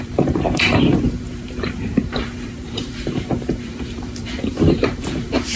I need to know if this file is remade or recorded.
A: remade